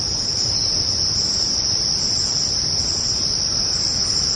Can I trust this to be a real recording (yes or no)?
yes